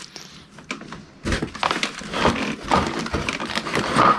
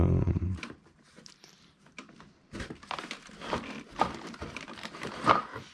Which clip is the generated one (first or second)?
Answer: second